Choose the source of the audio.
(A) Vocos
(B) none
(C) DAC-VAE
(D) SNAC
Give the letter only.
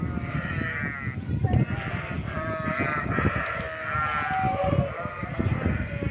B